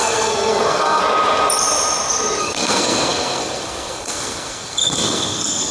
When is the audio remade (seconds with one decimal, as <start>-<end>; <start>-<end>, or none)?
0.0-1.0; 2.4-5.7